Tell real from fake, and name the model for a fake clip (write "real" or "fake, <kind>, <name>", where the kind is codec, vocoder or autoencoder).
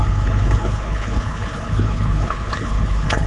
fake, codec, HILCodec